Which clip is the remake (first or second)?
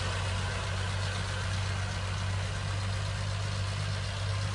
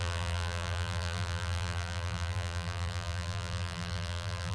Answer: second